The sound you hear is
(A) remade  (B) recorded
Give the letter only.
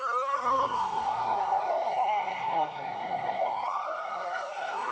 A